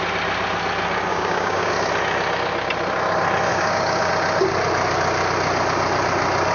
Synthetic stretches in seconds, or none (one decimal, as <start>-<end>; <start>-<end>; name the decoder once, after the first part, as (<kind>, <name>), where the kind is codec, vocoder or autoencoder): 1.1-1.7 (codec, DAC); 3.5-4.1